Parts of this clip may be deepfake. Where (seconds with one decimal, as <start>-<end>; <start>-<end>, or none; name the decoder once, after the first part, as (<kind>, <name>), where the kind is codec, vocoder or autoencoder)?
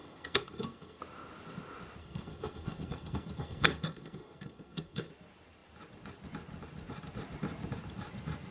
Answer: 0.0-1.0 (codec, SNAC); 2.0-5.1